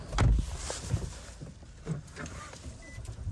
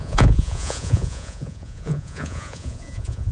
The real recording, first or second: first